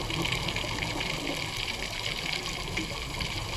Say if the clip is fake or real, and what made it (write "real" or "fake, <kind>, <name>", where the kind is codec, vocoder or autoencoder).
real